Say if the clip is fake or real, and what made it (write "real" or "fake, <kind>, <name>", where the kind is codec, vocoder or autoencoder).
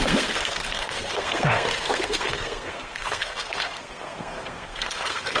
fake, codec, SNAC